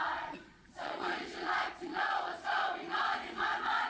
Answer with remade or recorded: remade